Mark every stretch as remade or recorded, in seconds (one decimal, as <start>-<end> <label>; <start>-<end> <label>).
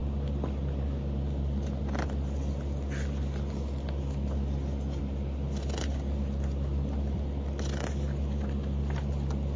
0.0-9.6 recorded